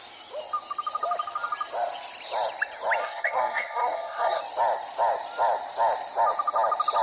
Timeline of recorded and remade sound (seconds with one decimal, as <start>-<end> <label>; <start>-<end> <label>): 0.0-3.0 recorded; 3.0-4.4 remade; 4.4-7.0 recorded